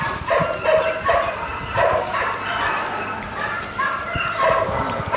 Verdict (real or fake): real